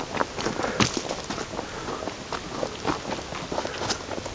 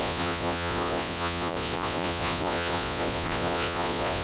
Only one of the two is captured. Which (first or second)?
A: first